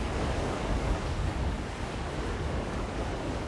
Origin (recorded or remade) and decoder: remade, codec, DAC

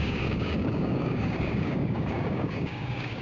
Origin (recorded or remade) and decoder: remade, codec, DAC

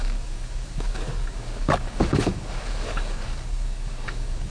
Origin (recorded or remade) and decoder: remade, codec, DAC